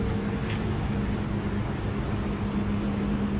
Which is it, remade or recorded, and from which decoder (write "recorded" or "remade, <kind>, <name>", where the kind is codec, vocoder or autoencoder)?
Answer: recorded